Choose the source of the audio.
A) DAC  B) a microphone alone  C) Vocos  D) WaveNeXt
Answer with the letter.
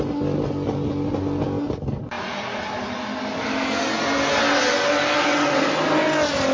B